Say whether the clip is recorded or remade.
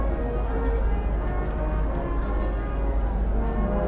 recorded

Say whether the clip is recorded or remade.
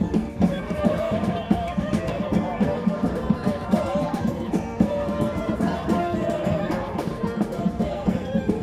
remade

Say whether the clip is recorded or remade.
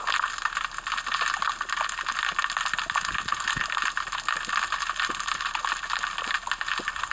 recorded